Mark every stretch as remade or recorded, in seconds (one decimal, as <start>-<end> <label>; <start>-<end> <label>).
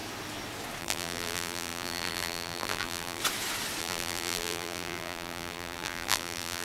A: 0.0-0.8 recorded; 0.8-3.2 remade; 3.2-3.8 recorded; 3.8-6.6 remade